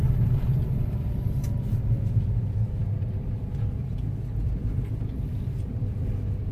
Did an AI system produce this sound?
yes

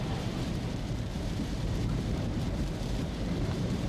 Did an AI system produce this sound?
yes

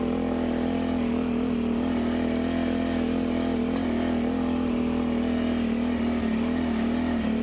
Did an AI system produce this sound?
no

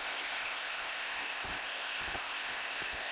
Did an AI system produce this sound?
yes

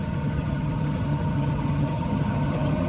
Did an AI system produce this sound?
yes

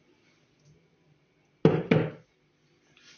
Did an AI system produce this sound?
no